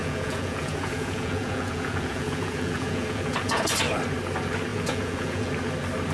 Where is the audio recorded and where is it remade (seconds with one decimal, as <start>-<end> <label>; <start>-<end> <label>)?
0.0-3.6 remade; 3.6-4.7 recorded; 4.7-5.5 remade; 5.5-6.1 recorded